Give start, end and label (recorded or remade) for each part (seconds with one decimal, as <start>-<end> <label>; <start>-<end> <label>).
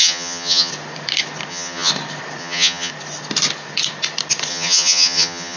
0.0-0.7 remade; 0.7-1.5 recorded; 1.5-1.9 remade; 1.9-2.4 recorded; 2.4-2.9 remade; 2.9-4.5 recorded; 4.5-5.6 remade